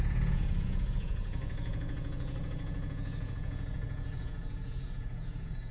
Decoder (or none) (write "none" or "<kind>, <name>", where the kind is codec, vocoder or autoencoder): vocoder, Vocos